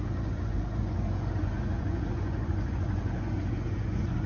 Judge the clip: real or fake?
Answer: fake